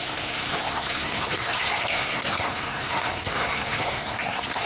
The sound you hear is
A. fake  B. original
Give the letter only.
A